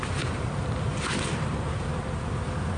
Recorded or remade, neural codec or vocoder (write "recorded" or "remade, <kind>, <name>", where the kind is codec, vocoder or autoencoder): recorded